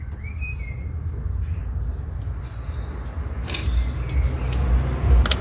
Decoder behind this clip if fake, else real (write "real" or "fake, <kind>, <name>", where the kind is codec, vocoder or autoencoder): real